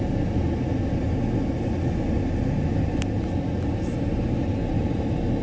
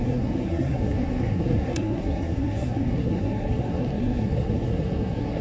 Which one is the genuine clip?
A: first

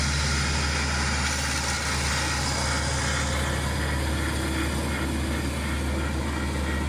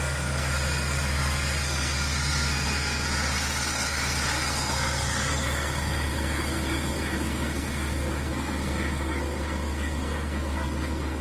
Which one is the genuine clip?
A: first